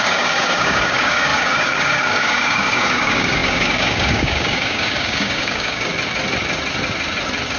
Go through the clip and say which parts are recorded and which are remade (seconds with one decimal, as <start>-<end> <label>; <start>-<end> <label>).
0.0-5.9 remade; 5.9-7.6 recorded